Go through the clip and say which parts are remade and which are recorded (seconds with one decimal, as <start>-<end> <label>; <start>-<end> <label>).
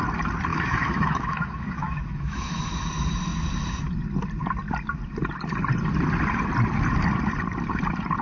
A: 0.0-0.5 recorded; 0.5-2.7 remade; 2.7-8.2 recorded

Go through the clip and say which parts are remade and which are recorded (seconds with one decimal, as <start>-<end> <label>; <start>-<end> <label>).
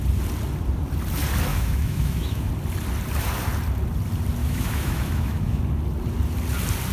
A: 0.0-1.5 recorded; 1.5-2.5 remade; 2.5-4.4 recorded; 4.4-5.6 remade; 5.6-6.9 recorded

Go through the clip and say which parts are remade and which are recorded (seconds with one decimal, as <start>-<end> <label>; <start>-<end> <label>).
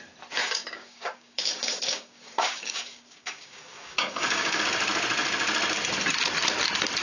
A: 0.0-0.4 recorded; 0.4-4.6 remade; 4.6-7.0 recorded